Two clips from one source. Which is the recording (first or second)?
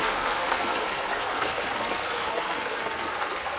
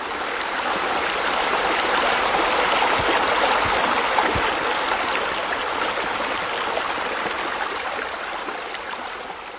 second